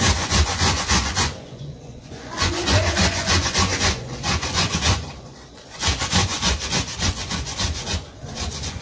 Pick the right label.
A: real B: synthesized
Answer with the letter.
B